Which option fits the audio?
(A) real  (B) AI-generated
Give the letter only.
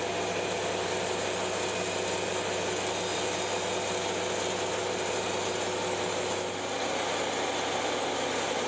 A